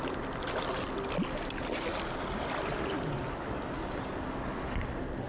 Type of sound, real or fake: real